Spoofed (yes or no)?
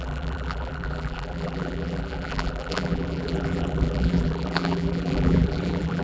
yes